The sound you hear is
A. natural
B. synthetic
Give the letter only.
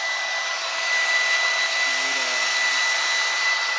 A